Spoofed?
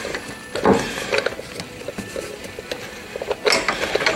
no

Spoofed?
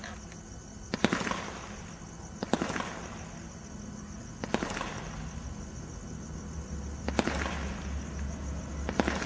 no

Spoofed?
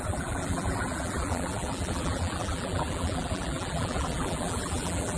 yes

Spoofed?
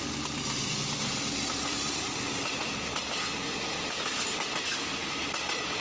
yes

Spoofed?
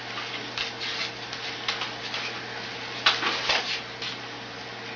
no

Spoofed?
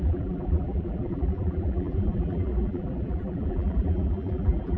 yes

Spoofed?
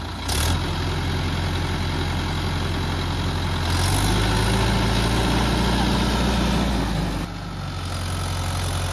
no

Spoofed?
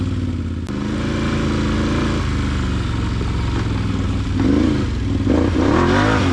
no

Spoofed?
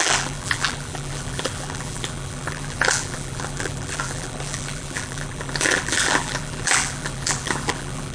yes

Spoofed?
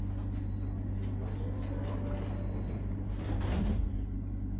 no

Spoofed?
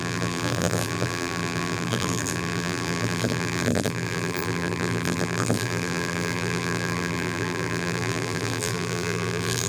yes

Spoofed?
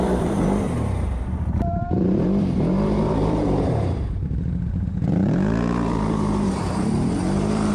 yes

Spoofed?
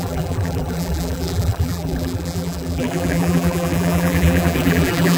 yes